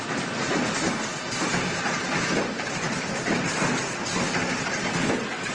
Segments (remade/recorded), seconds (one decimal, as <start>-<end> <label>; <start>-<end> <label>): 0.0-1.5 recorded; 1.5-4.8 remade; 4.8-5.5 recorded